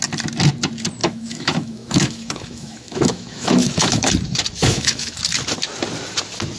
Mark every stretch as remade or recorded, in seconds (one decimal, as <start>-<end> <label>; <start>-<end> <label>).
0.0-1.0 recorded; 1.0-4.1 remade; 4.1-4.6 recorded; 4.6-5.2 remade; 5.2-6.6 recorded